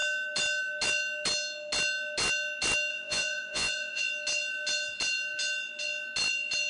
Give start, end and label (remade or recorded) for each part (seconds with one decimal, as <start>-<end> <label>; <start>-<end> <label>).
0.0-2.9 recorded; 2.9-4.0 remade; 4.0-6.7 recorded

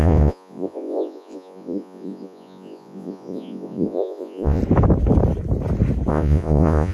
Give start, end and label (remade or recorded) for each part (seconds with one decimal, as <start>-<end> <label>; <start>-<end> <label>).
0.0-4.6 remade; 4.6-6.1 recorded; 6.1-6.9 remade